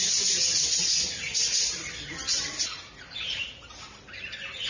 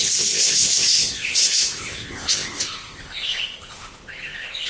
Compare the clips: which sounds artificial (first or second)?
second